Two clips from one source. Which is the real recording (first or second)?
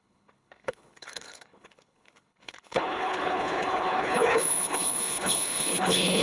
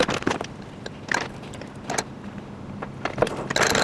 second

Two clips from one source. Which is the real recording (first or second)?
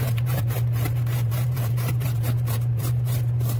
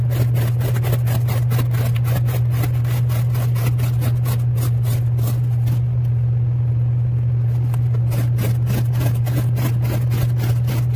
second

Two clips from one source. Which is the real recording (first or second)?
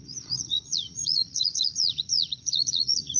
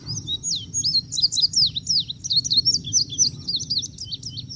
second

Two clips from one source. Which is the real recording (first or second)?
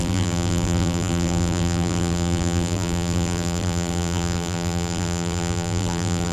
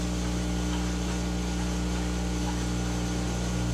second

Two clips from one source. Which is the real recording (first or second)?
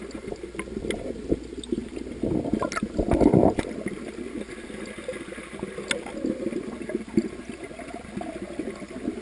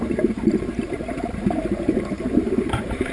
first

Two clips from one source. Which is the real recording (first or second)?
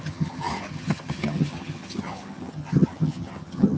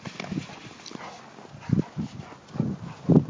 second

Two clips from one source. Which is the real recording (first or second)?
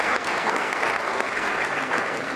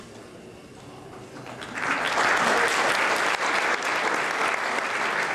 second